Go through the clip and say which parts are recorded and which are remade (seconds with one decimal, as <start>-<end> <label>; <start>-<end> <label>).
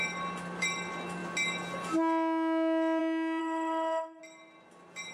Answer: 0.0-3.4 recorded; 3.4-4.2 remade; 4.2-5.1 recorded